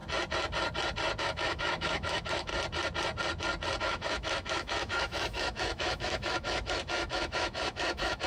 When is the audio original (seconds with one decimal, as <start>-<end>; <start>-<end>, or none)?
0.0-1.2; 2.5-3.8